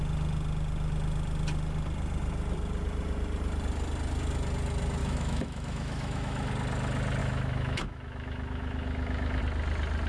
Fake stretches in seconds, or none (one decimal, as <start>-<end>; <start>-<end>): 5.0-6.5; 7.2-9.4